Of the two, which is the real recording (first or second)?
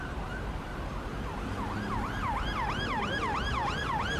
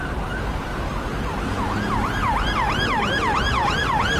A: second